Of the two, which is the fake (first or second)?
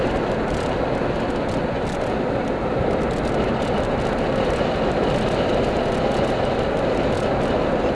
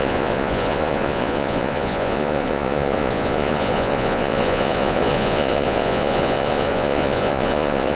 second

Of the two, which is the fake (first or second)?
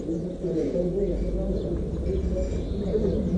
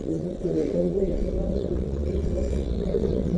second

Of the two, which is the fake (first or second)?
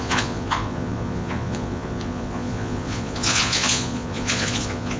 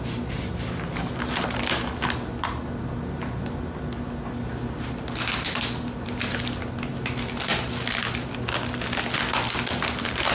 first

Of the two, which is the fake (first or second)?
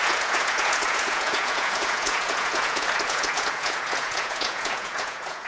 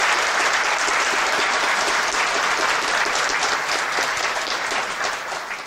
first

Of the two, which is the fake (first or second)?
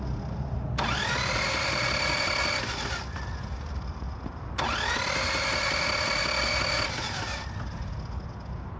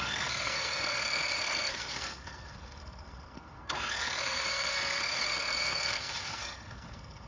second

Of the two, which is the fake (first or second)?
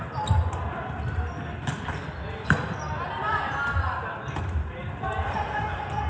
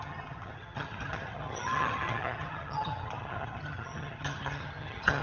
second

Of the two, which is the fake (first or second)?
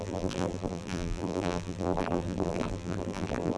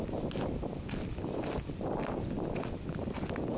first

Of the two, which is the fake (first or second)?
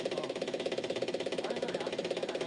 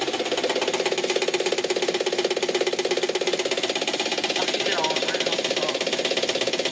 first